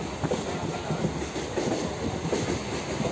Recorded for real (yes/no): yes